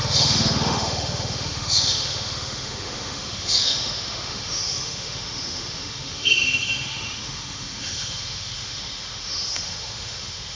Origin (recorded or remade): remade